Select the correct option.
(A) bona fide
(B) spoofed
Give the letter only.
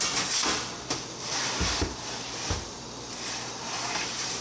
B